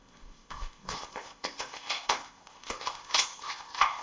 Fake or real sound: fake